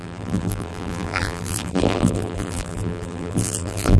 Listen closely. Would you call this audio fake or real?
fake